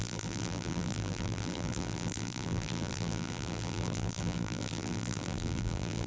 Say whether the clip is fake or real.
fake